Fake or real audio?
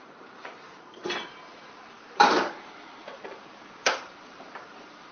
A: fake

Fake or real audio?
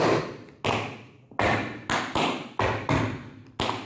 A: real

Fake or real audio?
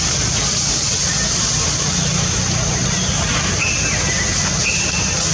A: real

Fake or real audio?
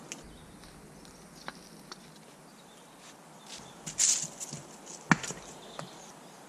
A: real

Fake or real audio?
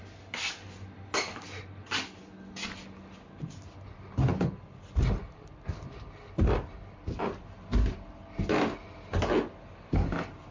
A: real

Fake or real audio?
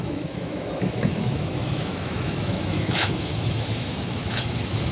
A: fake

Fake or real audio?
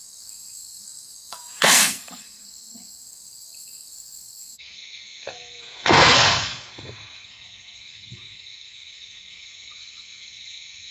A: fake